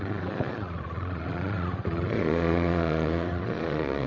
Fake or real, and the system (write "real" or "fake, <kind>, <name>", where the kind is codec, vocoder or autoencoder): fake, vocoder, Vocos